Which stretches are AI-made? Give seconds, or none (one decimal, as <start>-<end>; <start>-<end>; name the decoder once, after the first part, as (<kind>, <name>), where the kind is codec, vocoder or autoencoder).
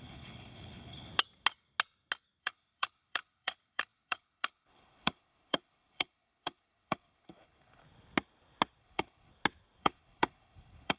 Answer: 0.0-1.1 (codec, HILCodec); 2.4-7.8; 8.8-9.3; 9.8-11.0